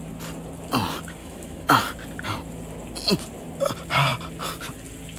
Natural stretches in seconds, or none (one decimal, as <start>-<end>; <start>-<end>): 0.0-1.2; 1.8-5.2